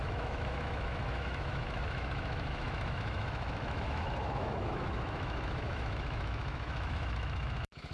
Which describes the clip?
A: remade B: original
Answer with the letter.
A